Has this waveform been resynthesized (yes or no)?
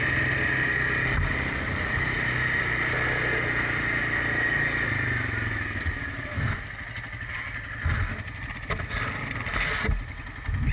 no